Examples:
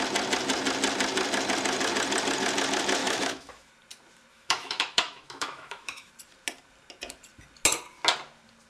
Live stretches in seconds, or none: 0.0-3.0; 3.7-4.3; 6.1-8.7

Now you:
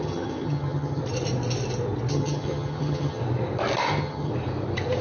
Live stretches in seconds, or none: 1.0-2.1; 3.2-3.9; 4.3-5.0

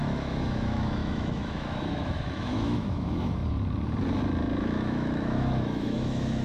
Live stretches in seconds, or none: 3.4-4.6

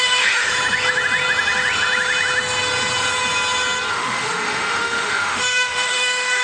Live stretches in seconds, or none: 0.5-3.9

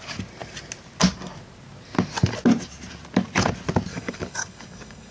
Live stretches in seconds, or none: 0.0-3.9

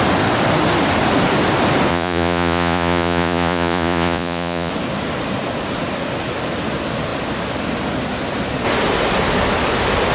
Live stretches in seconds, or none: 0.0-1.9; 4.7-10.1

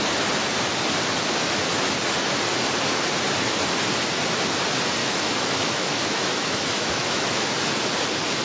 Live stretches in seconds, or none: 0.0-5.0; 7.5-8.4